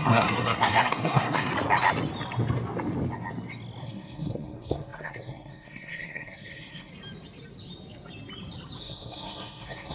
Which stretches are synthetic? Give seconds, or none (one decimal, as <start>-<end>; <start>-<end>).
0.0-1.5; 3.8-6.9; 8.8-9.9